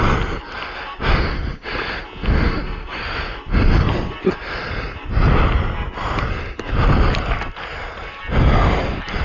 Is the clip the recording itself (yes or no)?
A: yes